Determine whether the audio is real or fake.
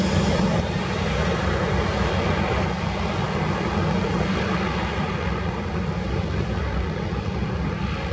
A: real